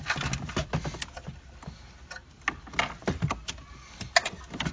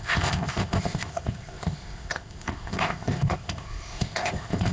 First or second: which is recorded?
first